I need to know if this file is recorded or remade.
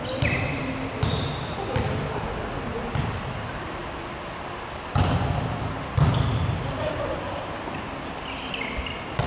recorded